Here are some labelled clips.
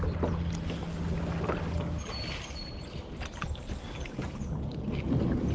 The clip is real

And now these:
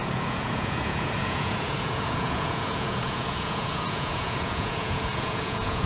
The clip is fake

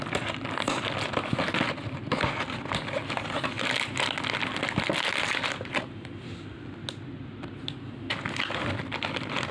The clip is real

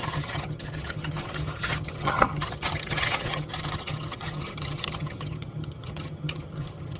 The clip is fake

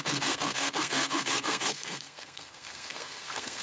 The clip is fake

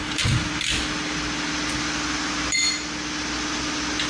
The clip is real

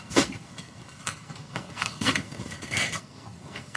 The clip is fake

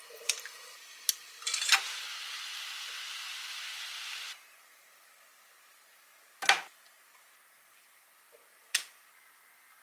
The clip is real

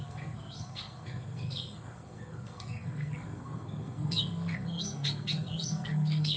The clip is fake